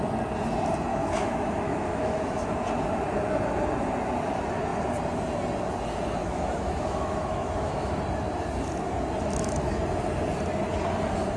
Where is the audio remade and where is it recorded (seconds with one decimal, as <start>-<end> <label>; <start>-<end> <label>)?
0.0-0.9 recorded; 0.9-2.5 remade; 2.5-6.2 recorded; 6.2-7.9 remade; 7.9-11.4 recorded